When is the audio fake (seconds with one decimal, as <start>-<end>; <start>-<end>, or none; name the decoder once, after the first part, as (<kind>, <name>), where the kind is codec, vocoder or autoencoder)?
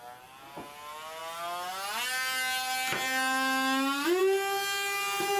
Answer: none